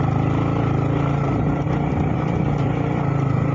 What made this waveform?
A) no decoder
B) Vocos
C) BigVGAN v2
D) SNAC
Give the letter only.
A